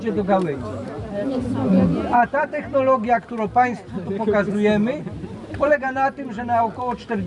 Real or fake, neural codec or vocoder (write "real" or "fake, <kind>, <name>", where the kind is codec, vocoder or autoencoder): real